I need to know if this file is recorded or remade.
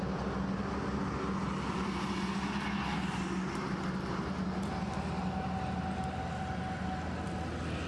recorded